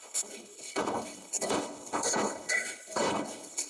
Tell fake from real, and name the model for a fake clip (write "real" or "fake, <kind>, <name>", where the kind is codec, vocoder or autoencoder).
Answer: fake, codec, HILCodec